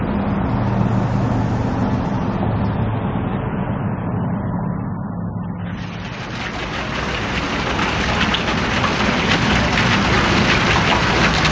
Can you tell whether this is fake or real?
real